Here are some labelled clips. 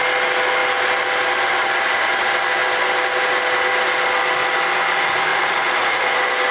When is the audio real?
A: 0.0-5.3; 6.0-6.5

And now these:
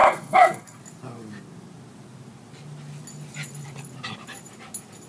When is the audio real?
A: 0.8-5.1

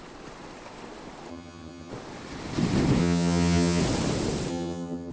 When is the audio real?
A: 0.0-1.3; 1.9-3.0; 3.8-4.5

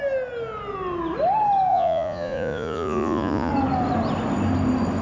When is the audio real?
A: 0.0-1.7; 3.5-5.0

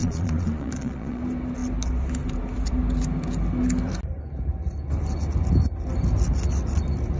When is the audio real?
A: 1.2-7.2

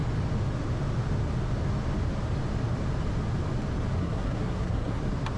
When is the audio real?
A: 0.0-4.0; 5.0-5.4

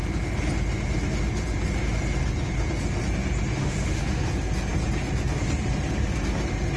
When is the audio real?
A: 0.0-3.6; 4.2-6.8